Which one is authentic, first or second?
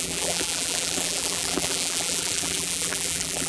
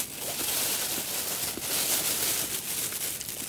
second